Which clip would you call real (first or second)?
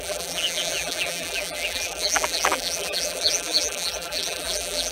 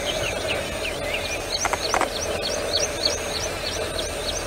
second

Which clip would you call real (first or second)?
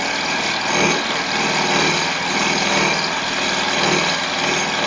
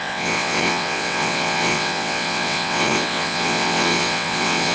first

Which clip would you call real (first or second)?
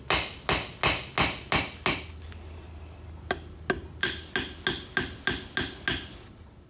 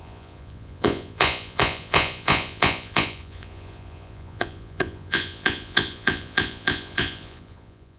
first